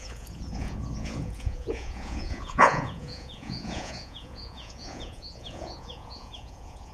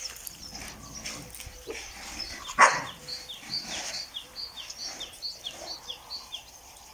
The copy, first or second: first